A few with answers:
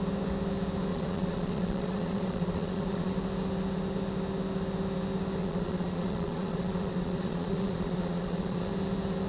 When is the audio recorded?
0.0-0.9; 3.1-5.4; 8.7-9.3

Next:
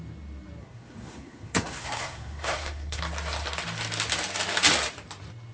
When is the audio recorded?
0.0-0.6; 3.0-5.5

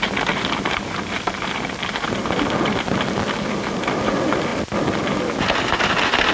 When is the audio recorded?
0.0-6.3